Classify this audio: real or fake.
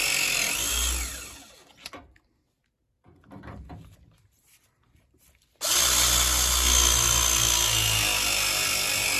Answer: real